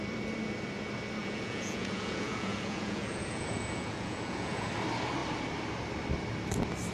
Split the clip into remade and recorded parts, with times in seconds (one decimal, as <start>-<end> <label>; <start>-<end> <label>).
0.0-1.2 recorded; 1.2-4.7 remade; 4.7-6.9 recorded